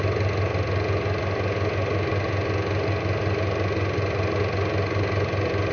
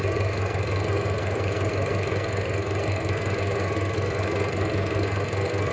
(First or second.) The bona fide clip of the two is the first